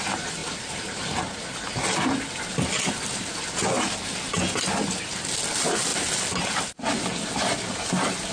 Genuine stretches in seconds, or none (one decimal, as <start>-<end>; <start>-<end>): 0.0-8.3